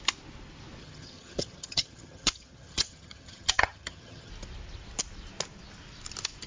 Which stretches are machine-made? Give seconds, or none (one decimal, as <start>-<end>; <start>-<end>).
0.8-4.3